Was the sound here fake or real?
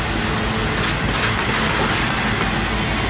real